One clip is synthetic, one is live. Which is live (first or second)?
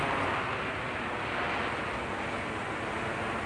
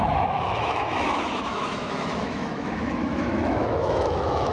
first